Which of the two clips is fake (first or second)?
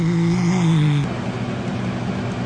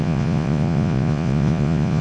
second